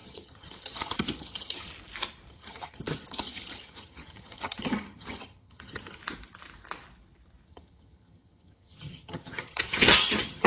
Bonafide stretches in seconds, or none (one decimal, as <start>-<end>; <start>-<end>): 1.7-2.3; 6.0-7.5